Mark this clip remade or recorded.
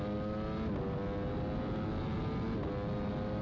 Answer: recorded